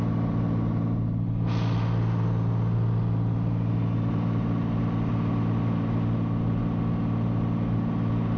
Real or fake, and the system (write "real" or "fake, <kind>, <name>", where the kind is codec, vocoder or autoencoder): real